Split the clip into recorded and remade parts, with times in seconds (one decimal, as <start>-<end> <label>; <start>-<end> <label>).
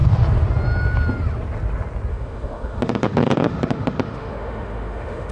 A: 0.0-2.1 recorded; 2.1-5.3 remade